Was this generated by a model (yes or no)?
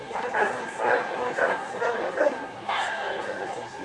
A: yes